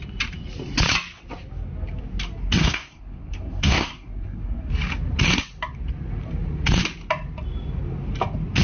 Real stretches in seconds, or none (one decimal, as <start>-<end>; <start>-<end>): 0.0-2.6; 4.7-8.6